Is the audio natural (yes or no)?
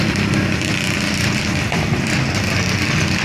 yes